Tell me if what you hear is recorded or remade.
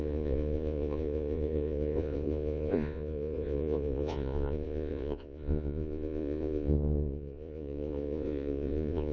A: remade